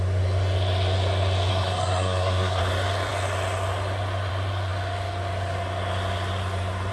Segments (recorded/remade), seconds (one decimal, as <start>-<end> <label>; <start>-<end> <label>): 0.0-1.5 recorded; 1.5-2.6 remade; 2.6-6.9 recorded